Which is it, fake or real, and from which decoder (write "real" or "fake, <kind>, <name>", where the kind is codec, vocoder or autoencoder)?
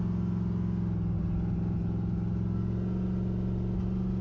real